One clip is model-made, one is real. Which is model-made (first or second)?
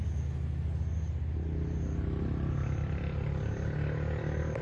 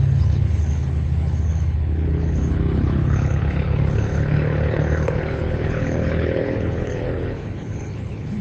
second